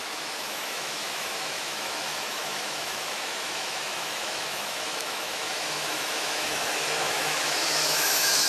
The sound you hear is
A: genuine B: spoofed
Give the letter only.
B